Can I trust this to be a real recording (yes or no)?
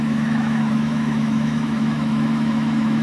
no